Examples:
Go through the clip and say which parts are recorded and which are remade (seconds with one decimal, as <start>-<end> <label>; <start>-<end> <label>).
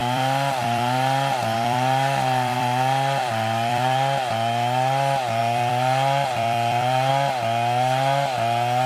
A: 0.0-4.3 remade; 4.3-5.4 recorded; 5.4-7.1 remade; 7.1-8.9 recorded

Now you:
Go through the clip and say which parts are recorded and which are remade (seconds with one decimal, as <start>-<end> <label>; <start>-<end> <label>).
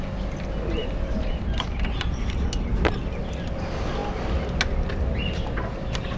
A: 0.0-0.8 recorded; 0.8-2.5 remade; 2.5-6.2 recorded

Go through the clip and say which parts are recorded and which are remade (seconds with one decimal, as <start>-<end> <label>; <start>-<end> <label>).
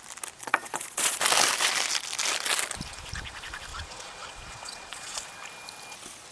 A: 0.0-0.4 recorded; 0.4-1.2 remade; 1.2-3.7 recorded; 3.7-5.2 remade; 5.2-6.3 recorded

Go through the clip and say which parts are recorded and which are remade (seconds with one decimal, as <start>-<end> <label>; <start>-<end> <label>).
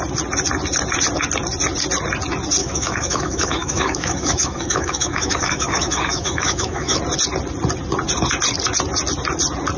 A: 0.0-2.6 recorded; 2.6-7.0 remade; 7.0-9.8 recorded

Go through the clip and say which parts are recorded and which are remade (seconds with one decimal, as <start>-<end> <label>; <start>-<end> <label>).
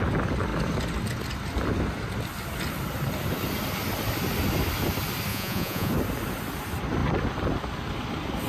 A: 0.0-5.3 recorded; 5.3-5.9 remade; 5.9-8.5 recorded